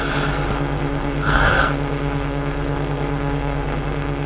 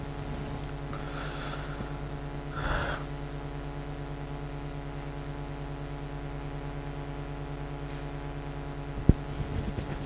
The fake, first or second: first